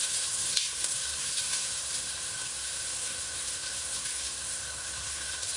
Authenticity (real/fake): fake